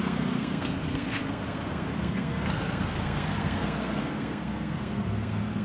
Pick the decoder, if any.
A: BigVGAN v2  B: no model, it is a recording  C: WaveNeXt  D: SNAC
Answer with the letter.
D